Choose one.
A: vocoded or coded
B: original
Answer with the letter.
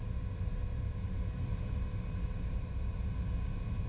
A